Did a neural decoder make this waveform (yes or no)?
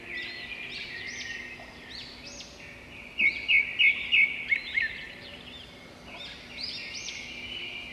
no